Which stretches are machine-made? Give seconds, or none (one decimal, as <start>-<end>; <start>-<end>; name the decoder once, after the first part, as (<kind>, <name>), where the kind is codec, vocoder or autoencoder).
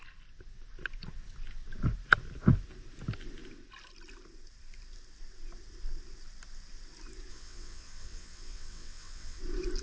7.3-9.4 (vocoder, WaveNeXt)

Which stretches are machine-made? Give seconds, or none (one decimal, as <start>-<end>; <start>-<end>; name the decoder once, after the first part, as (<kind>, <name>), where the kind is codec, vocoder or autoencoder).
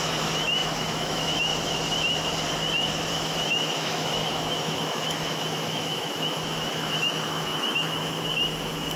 0.0-1.5 (autoencoder, DAC-VAE); 3.1-9.0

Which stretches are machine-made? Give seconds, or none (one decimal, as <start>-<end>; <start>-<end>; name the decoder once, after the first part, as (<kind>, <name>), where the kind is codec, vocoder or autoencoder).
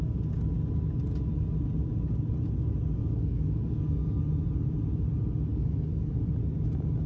3.0-4.2 (codec, DAC); 5.5-6.1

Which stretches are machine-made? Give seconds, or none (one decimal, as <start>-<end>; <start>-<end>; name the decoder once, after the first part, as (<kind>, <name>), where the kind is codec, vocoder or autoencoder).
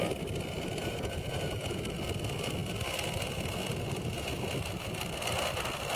0.8-1.8 (vocoder, Vocos)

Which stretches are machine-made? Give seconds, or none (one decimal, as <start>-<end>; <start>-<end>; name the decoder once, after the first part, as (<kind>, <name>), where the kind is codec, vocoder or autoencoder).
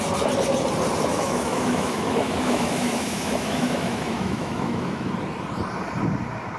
1.1-5.1 (autoencoder, DAC-VAE)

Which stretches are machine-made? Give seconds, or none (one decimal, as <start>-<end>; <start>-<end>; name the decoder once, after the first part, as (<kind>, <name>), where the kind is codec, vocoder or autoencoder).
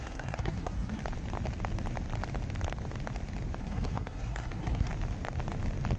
0.0-1.0 (codec, SNAC); 3.6-4.9